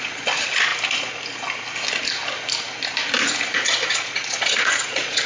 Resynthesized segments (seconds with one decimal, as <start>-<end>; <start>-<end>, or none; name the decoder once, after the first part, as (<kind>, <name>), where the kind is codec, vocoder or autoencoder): 0.0-0.7 (vocoder, Vocos); 3.9-5.3